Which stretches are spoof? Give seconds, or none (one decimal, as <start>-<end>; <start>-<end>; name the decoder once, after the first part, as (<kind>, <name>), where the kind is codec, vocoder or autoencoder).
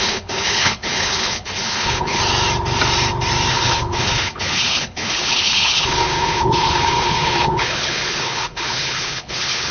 0.0-2.2 (codec, HILCodec); 3.5-9.7